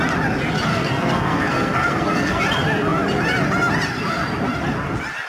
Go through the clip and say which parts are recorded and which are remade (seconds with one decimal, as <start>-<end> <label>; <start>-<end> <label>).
0.0-0.7 recorded; 0.7-2.4 remade; 2.4-5.3 recorded